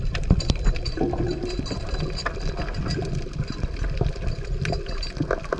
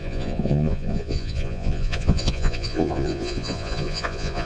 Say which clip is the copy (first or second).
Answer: second